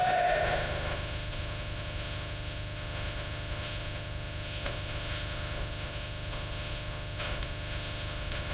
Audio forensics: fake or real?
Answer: fake